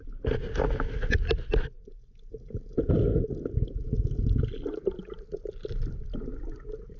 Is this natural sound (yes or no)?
yes